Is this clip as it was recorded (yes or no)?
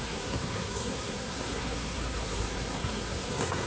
no